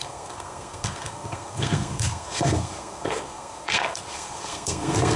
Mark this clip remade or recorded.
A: remade